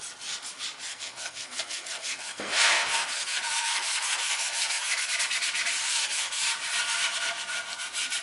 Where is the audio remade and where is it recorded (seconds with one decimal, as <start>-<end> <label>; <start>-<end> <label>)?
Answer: 0.0-0.9 recorded; 0.9-5.1 remade; 5.1-5.8 recorded; 5.8-6.4 remade; 6.4-8.2 recorded